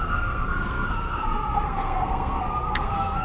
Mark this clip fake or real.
fake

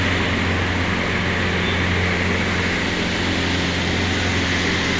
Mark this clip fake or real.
real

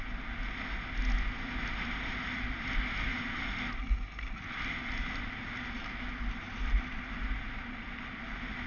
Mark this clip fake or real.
real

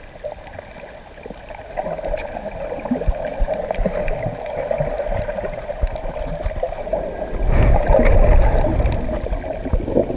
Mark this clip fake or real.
real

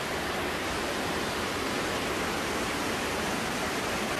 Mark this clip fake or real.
real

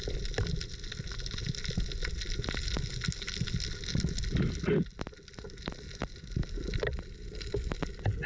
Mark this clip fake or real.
real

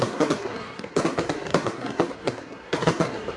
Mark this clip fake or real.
fake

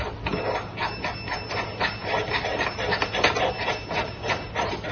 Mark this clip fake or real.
real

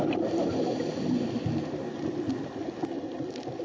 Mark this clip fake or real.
real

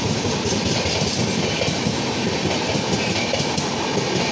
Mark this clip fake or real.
real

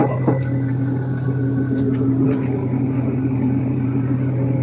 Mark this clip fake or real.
real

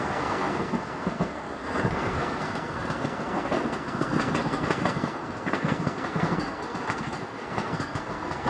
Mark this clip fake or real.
fake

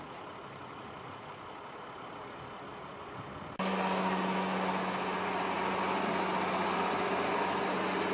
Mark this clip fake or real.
real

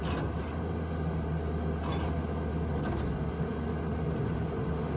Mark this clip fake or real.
real